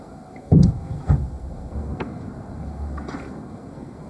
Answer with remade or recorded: remade